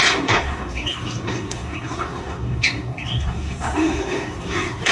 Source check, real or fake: fake